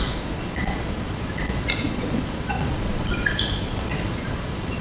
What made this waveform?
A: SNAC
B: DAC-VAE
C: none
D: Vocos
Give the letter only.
D